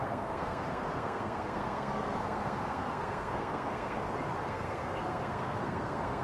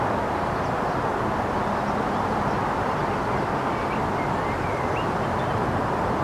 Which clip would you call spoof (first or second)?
first